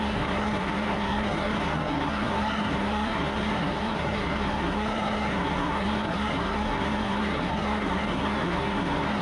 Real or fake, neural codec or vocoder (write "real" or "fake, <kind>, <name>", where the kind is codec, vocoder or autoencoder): fake, codec, SNAC